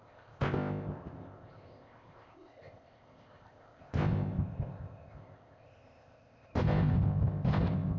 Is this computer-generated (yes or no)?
yes